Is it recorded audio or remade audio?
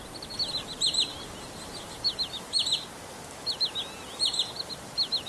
recorded